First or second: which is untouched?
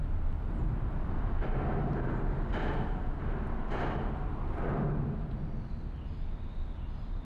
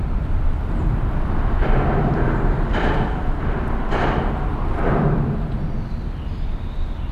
first